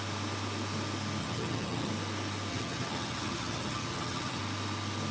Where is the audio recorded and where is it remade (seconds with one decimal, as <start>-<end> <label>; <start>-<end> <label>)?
0.0-1.2 recorded; 1.2-1.9 remade; 1.9-2.5 recorded; 2.5-4.4 remade; 4.4-5.1 recorded